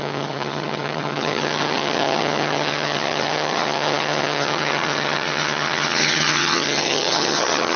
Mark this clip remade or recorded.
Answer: remade